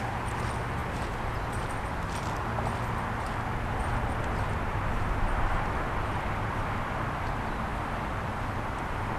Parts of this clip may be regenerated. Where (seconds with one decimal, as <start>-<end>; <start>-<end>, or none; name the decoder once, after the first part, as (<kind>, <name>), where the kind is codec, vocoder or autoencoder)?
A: none